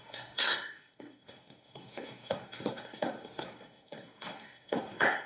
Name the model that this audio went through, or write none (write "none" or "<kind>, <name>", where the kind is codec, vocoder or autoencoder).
codec, SNAC